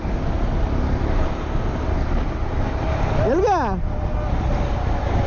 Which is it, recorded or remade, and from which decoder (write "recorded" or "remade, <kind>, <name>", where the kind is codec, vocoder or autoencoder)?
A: recorded